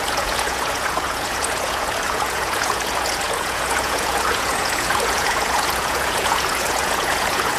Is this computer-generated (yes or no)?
yes